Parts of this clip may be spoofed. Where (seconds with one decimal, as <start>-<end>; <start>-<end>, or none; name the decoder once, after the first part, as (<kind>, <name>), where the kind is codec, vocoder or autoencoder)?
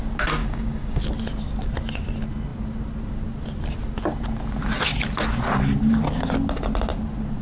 0.4-1.0 (codec, DAC)